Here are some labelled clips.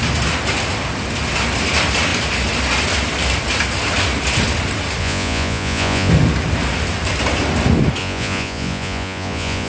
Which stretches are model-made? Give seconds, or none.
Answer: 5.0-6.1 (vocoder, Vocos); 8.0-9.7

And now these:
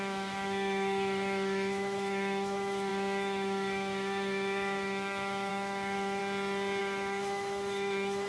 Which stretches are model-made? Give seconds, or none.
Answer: 0.0-6.2 (autoencoder, DAC-VAE); 6.8-8.3

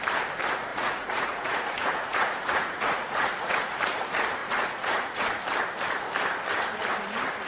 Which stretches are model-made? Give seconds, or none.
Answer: 0.7-3.8 (vocoder, Vocos); 4.4-5.4

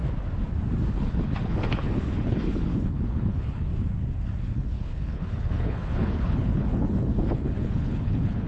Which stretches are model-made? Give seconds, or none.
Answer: 0.9-3.7 (codec, HILCodec); 4.4-8.5

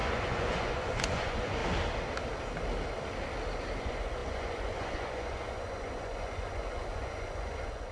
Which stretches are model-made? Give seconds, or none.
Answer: 0.0-1.6 (vocoder, Vocos); 3.8-7.9

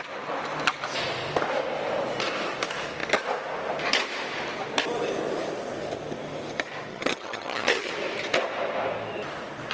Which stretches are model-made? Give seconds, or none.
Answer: 6.9-7.9 (vocoder, HiFi-GAN)

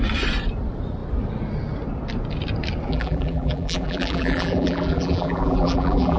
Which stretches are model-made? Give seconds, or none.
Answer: 2.9-6.2 (vocoder, BigVGAN v2)